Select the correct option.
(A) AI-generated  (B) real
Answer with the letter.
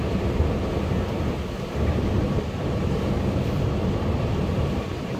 B